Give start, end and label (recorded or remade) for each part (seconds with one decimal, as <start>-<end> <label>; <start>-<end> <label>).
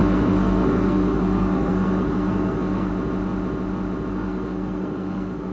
0.0-2.9 remade; 2.9-4.1 recorded; 4.1-5.5 remade